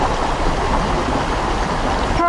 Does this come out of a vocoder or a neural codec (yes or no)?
no